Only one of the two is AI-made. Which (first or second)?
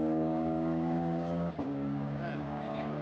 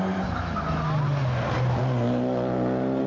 first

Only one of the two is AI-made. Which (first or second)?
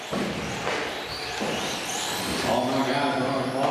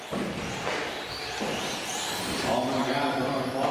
second